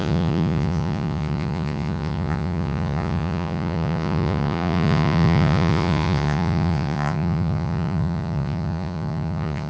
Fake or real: fake